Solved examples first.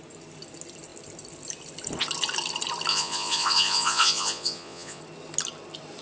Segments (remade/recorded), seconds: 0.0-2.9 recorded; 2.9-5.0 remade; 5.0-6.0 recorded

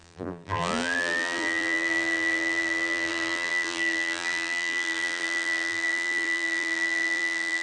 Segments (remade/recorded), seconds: 0.0-7.6 remade

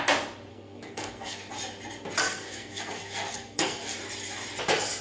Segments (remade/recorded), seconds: 0.0-0.5 recorded; 0.5-1.5 remade; 1.5-2.2 recorded; 2.2-4.0 remade; 4.0-5.0 recorded

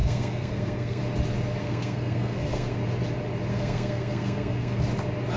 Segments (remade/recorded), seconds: 0.0-1.0 remade; 1.0-1.6 recorded; 1.6-2.8 remade; 2.8-3.5 recorded; 3.5-4.8 remade; 4.8-5.4 recorded